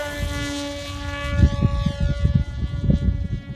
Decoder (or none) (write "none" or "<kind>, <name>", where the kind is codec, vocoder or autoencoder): none